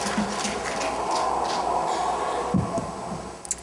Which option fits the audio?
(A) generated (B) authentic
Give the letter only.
B